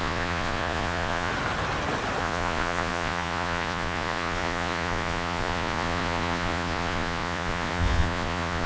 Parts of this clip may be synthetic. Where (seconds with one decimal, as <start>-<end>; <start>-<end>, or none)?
0.0-1.3; 2.2-8.7